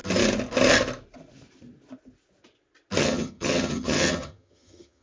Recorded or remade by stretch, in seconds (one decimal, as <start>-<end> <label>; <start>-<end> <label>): 0.0-3.0 recorded; 3.0-5.0 remade